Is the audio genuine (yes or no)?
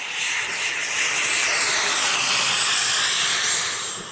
yes